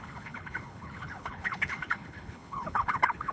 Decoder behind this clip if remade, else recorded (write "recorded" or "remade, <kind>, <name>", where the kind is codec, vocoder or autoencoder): remade, codec, HILCodec